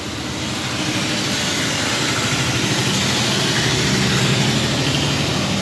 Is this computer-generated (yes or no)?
no